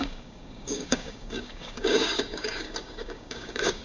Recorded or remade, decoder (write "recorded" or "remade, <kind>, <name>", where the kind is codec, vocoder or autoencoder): remade, codec, DAC